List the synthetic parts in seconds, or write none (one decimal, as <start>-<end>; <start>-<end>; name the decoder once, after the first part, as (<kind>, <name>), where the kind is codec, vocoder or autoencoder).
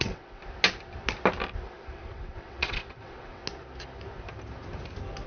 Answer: 0.0-0.4 (vocoder, WaveNeXt); 1.7-3.4